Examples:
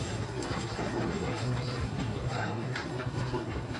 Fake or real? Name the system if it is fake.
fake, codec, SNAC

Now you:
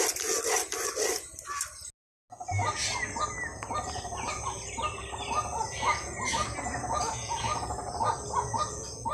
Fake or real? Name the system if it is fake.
real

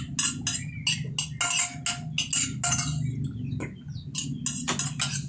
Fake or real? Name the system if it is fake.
real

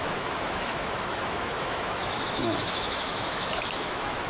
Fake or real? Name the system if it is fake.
fake, autoencoder, DAC-VAE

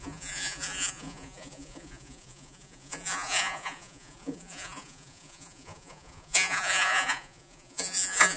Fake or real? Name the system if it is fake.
fake, vocoder, Vocos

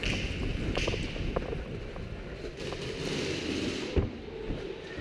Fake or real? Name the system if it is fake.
real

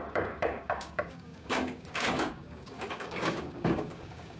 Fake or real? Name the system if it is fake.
fake, codec, DAC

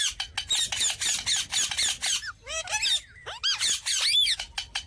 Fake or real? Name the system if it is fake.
real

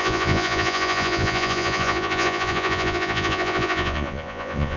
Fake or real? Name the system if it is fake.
fake, vocoder, Vocos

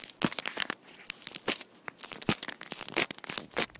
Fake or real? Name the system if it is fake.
real